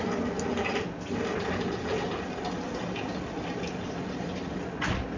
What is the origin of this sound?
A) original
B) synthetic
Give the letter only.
A